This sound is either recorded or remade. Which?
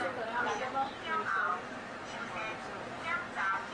recorded